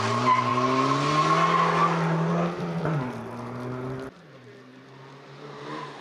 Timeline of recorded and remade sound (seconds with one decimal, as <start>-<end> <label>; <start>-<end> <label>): 0.0-6.0 recorded